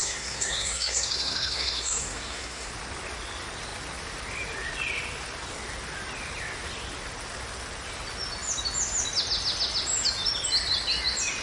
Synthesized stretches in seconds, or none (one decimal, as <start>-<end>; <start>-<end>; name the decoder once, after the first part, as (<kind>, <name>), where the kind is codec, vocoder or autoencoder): 0.0-2.7 (codec, SNAC)